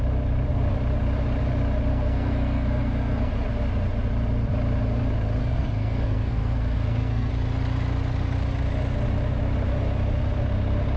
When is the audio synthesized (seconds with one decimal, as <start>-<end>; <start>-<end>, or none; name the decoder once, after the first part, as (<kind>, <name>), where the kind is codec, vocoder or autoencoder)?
1.9-3.3 (codec, SNAC); 5.4-7.3